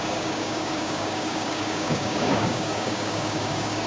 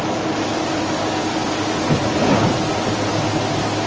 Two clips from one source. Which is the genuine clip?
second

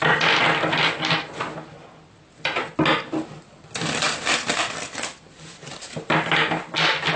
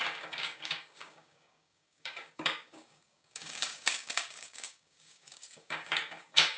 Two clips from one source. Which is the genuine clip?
first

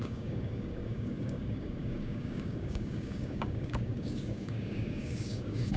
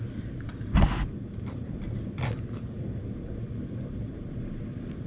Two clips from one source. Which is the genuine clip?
second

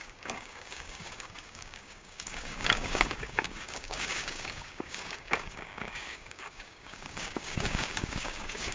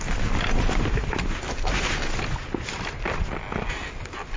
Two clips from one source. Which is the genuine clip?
second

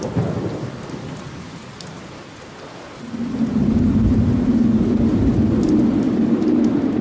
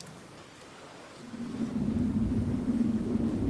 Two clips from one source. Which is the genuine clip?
first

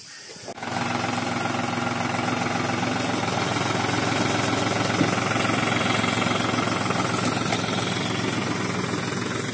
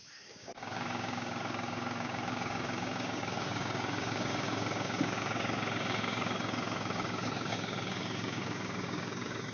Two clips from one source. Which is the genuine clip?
first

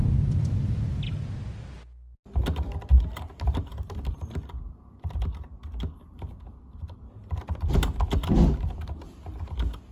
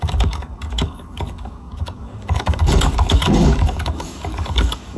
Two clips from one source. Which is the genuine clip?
first